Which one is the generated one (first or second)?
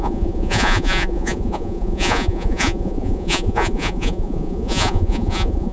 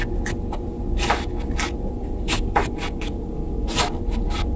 first